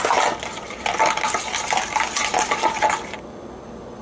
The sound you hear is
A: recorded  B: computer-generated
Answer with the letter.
A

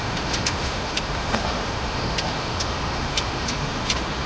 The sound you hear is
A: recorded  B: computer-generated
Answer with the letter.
B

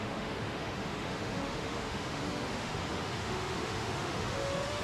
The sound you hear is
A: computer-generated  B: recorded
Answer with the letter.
A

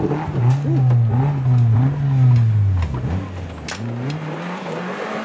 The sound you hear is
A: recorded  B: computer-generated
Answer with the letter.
A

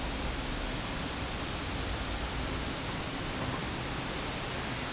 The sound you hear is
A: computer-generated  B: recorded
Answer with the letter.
B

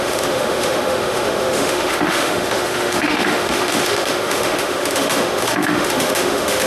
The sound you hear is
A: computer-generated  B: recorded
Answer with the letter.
A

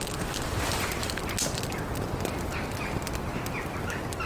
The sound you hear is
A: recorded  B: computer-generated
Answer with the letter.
A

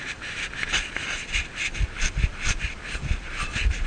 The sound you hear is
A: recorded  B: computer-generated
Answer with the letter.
A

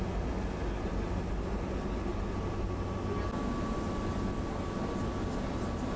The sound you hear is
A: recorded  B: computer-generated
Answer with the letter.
A